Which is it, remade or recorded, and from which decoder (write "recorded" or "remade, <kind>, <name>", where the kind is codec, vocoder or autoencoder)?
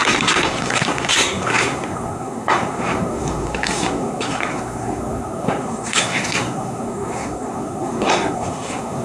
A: remade, codec, SNAC